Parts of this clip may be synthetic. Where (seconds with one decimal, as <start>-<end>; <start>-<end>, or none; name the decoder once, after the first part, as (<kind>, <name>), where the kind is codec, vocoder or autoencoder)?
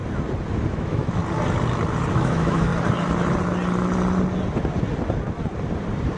0.7-1.2 (autoencoder, DAC-VAE); 2.1-2.7